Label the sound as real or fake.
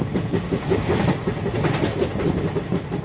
real